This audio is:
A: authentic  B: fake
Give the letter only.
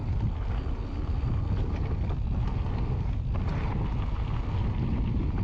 A